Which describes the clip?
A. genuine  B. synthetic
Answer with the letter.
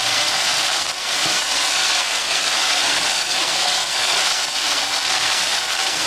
B